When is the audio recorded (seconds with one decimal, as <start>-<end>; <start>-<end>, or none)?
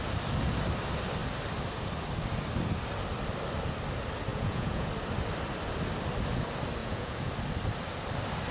0.0-4.3; 4.9-6.8; 7.3-8.5